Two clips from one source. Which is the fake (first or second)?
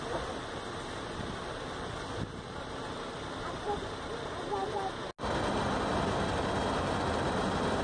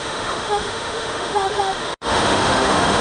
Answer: second